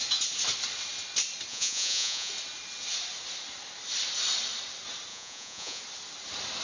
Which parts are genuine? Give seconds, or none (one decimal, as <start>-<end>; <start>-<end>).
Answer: 0.0-1.5; 2.3-5.1; 5.8-6.6